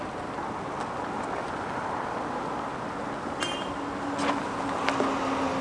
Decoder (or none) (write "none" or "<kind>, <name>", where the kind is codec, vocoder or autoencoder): none